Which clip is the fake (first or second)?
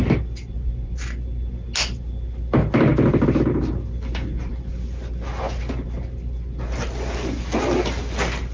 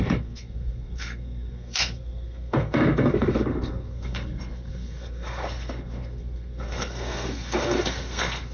second